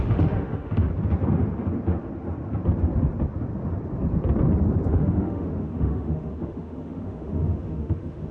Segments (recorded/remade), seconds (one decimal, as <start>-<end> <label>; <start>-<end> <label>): 0.0-0.9 remade; 0.9-4.9 recorded; 4.9-8.3 remade